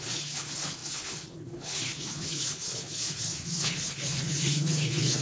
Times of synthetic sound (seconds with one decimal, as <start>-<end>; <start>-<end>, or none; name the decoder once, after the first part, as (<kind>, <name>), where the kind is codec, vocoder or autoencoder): 0.0-5.2 (codec, HILCodec)